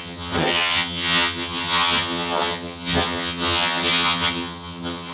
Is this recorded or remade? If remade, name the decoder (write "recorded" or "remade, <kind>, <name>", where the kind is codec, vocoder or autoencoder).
remade, vocoder, HiFi-GAN